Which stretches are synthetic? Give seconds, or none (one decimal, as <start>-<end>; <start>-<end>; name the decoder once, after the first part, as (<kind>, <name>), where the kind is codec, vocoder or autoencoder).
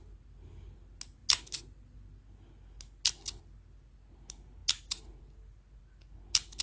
none